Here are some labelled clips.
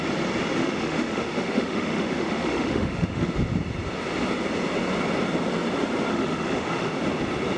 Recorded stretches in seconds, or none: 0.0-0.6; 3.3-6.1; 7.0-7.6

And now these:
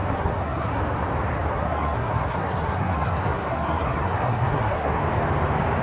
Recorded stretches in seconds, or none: 0.8-1.5; 5.0-5.8

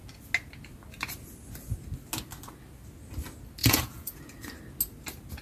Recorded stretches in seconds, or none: 0.0-3.6; 4.2-5.4